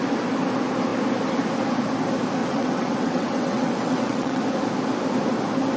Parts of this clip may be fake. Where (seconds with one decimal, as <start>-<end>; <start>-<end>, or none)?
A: 2.4-4.4